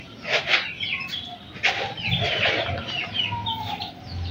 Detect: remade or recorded recorded